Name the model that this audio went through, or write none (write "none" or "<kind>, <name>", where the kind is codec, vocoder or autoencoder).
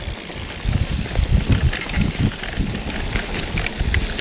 none